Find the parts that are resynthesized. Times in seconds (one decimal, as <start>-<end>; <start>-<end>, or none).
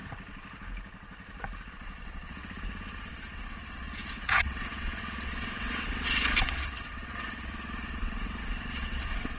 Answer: 1.7-2.4; 3.1-9.4